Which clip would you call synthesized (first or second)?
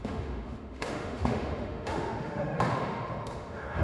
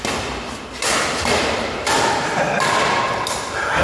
first